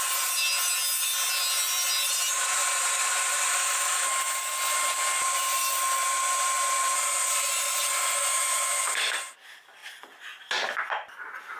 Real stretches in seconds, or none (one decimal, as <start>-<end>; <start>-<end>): 0.0-3.5; 4.5-8.2; 8.8-11.6